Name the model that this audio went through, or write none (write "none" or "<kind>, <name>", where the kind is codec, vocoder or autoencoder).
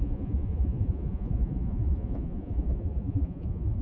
vocoder, Vocos